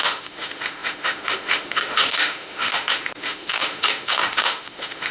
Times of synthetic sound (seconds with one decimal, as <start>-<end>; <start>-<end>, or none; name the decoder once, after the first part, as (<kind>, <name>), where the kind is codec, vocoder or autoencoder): 0.0-5.1 (autoencoder, DAC-VAE)